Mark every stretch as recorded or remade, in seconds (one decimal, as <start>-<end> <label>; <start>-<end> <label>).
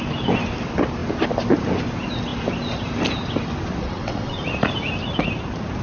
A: 0.0-3.8 recorded; 3.8-4.4 remade; 4.4-5.8 recorded